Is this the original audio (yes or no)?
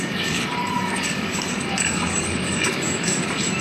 no